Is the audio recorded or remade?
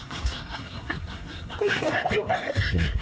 remade